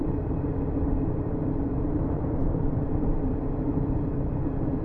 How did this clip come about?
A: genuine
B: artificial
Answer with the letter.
B